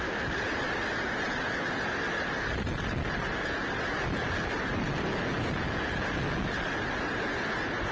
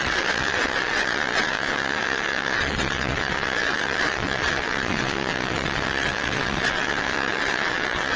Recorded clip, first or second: first